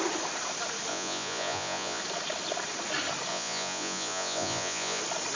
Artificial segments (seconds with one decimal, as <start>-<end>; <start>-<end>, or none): 0.9-2.0; 3.3-5.0